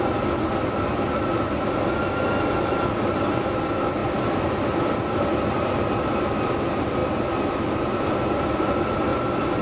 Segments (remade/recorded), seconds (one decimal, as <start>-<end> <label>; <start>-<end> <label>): 0.0-9.6 recorded